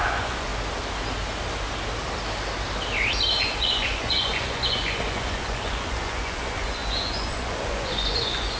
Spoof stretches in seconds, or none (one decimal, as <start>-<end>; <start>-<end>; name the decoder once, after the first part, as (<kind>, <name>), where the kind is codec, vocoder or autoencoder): 0.0-0.5 (vocoder, Vocos); 3.4-8.6